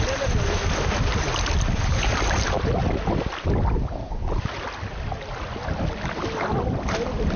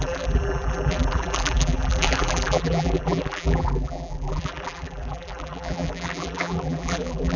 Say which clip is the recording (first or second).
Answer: first